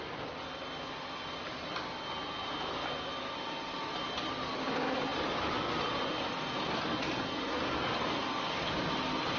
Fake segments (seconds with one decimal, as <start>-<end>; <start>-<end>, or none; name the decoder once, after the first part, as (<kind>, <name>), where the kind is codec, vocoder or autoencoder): none